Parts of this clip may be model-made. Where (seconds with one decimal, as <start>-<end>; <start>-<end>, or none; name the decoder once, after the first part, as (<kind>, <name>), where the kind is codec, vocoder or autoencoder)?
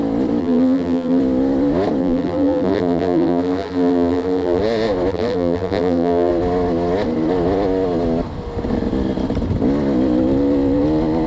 0.4-1.2 (vocoder, BigVGAN v2); 2.0-4.6; 5.1-6.3